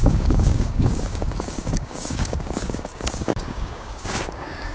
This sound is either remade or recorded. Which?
remade